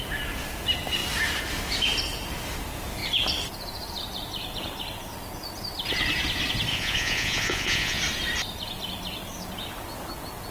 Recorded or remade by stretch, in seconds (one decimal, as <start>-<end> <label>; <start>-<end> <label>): 0.0-6.7 recorded; 6.7-8.0 remade; 8.0-10.5 recorded